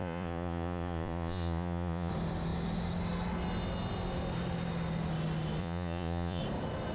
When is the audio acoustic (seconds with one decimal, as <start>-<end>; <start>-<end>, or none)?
2.1-5.6; 6.4-6.9